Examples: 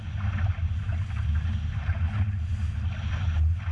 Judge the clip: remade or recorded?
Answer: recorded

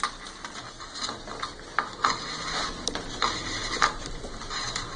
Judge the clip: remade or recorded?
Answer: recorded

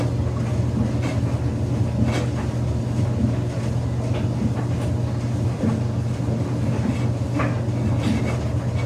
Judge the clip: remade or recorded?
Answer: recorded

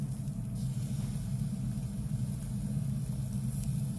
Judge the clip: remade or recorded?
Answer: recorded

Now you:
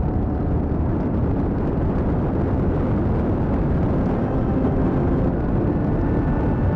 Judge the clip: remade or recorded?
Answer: recorded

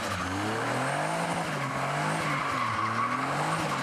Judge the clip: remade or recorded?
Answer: recorded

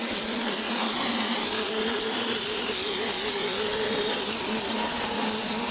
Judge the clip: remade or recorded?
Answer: recorded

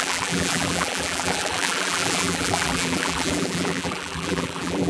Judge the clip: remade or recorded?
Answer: remade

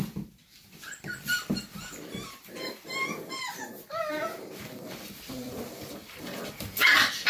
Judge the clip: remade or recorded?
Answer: remade